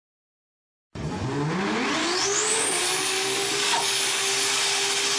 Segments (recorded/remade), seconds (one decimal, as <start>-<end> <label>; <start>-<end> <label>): 0.0-2.0 recorded; 2.0-4.6 remade; 4.6-5.2 recorded